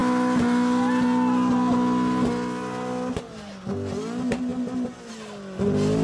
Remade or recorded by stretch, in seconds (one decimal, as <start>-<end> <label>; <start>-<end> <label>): 0.0-6.0 recorded